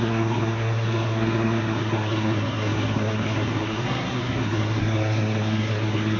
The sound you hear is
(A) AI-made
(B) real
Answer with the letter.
A